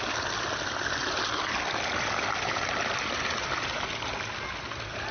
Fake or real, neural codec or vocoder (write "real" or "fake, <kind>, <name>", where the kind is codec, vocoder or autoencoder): real